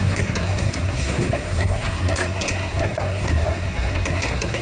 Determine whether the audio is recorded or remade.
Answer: remade